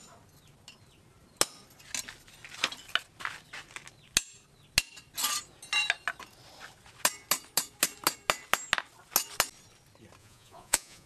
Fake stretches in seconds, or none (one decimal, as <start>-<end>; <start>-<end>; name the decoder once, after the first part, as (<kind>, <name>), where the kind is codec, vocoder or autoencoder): 10.2-11.1 (vocoder, Vocos)